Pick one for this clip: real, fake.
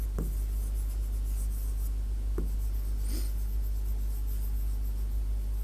real